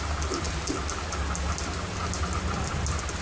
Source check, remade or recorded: recorded